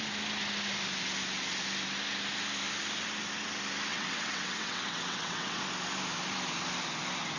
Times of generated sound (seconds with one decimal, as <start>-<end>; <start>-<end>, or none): 3.9-5.6

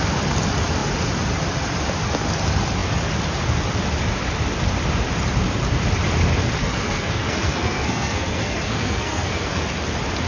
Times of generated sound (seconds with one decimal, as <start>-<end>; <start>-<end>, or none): 6.6-9.6